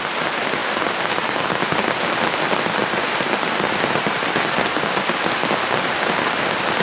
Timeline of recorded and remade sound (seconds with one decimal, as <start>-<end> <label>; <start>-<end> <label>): 0.0-6.8 recorded